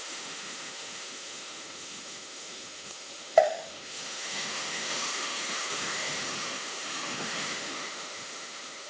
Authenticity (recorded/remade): remade